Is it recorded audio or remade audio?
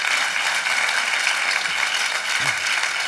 recorded